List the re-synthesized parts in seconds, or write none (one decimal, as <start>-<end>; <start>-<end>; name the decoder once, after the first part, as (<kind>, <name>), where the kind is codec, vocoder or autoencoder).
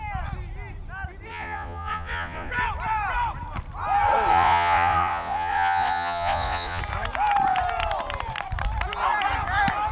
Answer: 1.3-2.5 (vocoder, Vocos); 4.3-6.8